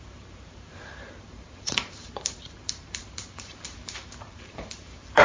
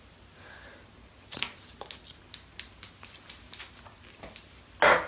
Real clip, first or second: second